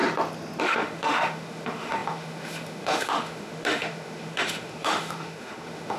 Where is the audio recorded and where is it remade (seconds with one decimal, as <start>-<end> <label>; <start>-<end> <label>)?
0.0-0.6 recorded; 0.6-6.0 remade